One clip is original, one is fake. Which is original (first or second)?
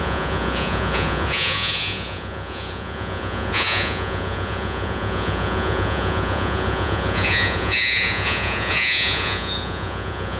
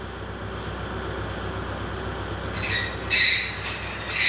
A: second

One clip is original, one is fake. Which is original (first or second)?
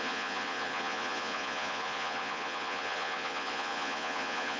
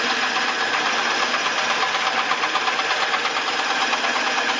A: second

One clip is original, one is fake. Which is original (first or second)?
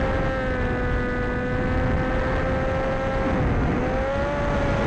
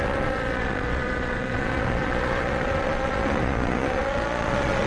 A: first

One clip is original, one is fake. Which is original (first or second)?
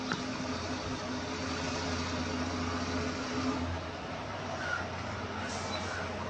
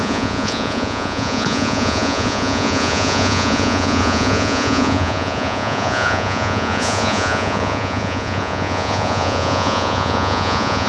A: first